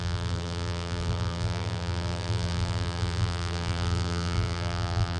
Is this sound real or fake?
fake